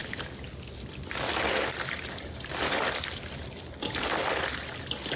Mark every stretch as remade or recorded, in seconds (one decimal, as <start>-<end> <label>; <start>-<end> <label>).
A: 0.0-5.2 remade